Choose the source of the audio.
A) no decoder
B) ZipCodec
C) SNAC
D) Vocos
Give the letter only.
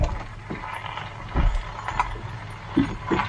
A